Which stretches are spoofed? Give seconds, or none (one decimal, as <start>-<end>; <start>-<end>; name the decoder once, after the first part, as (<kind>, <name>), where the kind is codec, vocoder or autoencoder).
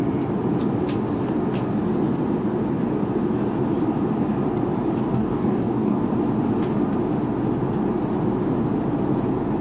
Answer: 5.1-6.0 (codec, DAC)